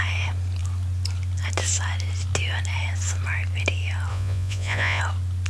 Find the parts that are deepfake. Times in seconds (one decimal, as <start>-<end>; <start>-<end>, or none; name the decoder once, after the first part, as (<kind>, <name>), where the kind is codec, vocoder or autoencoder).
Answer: 4.1-5.0 (vocoder, Vocos)